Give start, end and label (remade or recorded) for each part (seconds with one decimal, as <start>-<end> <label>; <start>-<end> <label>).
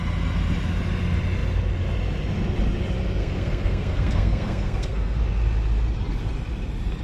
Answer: 0.0-3.2 recorded; 3.2-5.2 remade; 5.2-7.0 recorded